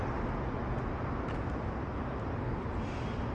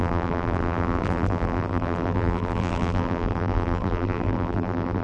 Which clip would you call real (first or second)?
first